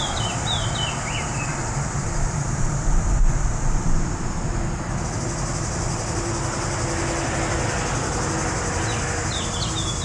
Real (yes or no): yes